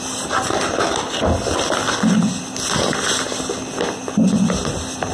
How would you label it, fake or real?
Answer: real